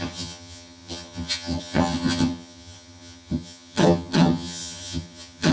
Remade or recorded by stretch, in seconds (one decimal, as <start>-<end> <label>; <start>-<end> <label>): 0.0-5.5 remade